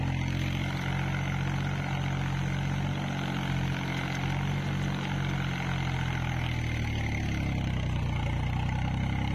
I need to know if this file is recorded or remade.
recorded